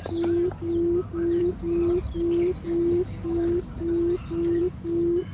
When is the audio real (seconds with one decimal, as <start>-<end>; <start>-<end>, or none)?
0.0-5.3